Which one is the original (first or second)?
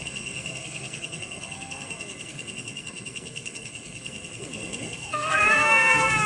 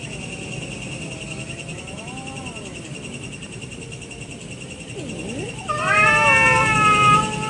second